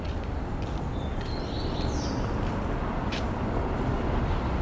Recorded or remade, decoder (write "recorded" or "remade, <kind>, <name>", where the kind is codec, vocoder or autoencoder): recorded